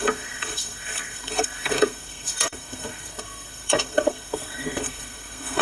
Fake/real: fake